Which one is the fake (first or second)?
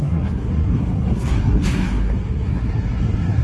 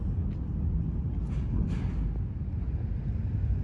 first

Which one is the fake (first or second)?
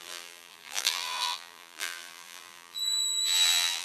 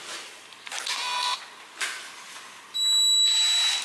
first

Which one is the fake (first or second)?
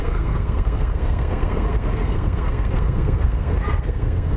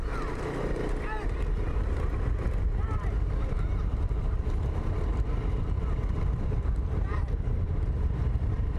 first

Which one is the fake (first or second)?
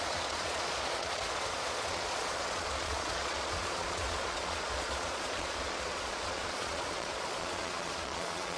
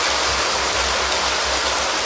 first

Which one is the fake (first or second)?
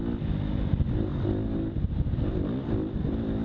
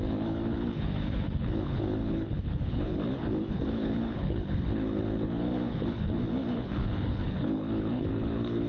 second